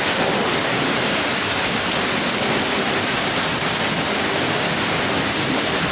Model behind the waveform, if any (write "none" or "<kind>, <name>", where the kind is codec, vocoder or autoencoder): vocoder, BigVGAN v2